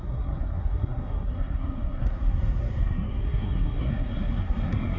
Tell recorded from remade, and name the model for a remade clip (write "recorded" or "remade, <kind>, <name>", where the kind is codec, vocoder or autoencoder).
remade, codec, SNAC